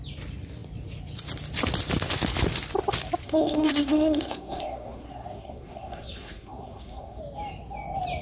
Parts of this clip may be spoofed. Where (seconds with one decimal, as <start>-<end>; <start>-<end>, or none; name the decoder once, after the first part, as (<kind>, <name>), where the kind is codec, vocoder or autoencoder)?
3.2-7.2 (codec, SNAC)